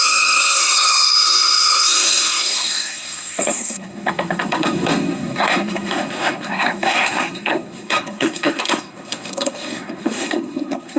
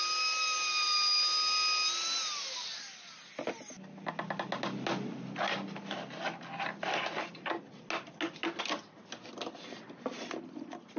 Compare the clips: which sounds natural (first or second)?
second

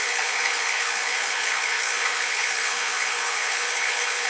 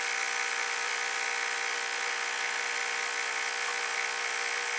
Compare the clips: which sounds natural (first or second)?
second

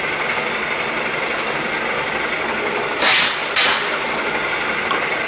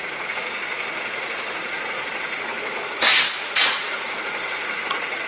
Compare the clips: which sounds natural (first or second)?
first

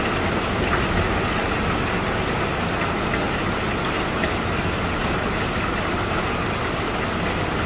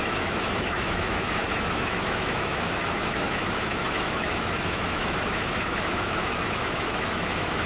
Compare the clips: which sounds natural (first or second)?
first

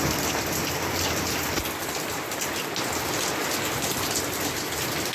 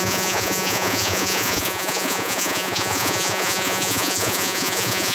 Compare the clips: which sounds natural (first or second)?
first